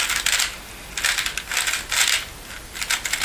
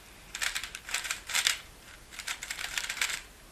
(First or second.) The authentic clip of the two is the first